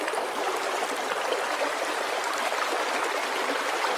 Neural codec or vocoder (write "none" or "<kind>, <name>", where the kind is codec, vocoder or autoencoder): vocoder, BigVGAN v2